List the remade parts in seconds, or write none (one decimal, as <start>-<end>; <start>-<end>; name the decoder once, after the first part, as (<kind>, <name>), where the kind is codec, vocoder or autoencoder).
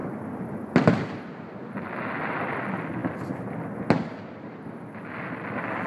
none